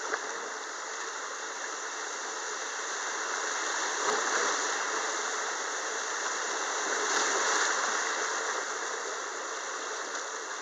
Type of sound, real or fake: real